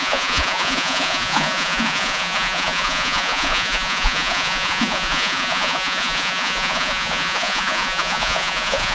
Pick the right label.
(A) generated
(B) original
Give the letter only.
A